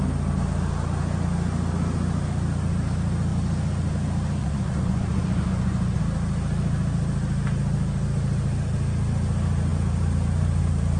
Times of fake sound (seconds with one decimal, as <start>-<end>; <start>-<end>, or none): 4.4-6.0